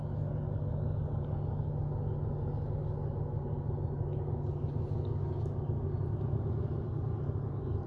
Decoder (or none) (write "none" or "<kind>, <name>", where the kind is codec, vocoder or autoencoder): none